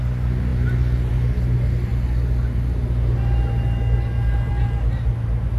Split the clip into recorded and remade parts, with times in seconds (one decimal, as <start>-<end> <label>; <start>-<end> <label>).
0.0-5.6 recorded